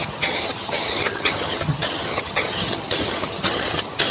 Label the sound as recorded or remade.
remade